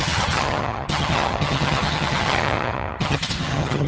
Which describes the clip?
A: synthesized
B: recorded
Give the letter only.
A